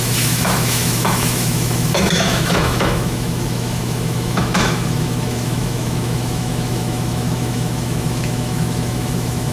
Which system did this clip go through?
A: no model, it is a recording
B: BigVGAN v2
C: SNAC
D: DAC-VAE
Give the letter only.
D